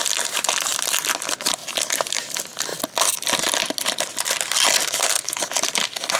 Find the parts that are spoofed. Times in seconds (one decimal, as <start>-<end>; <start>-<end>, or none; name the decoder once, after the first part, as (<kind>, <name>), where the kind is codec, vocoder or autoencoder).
4.8-5.4 (codec, SNAC)